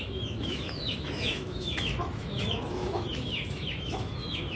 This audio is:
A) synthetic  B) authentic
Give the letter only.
A